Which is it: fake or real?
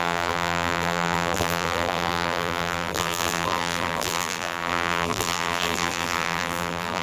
fake